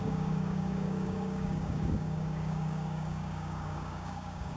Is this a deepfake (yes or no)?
yes